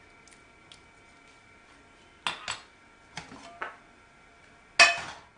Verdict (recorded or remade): recorded